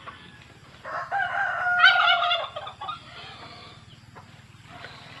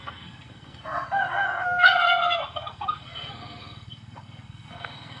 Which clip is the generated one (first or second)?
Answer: second